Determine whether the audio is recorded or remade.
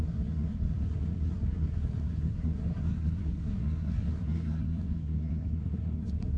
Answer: remade